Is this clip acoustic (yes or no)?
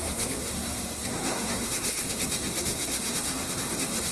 no